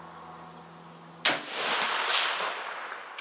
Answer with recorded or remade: recorded